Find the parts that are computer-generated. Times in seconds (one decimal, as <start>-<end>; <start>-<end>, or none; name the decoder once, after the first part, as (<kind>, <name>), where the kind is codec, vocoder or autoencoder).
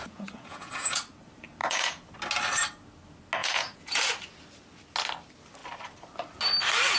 0.0-1.0 (vocoder, Vocos); 1.6-2.1; 3.4-4.0